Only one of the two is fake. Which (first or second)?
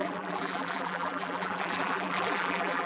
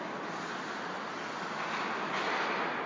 first